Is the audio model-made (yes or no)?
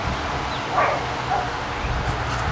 no